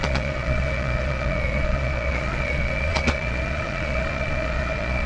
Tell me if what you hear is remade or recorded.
remade